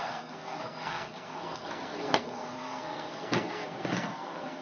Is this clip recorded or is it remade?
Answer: remade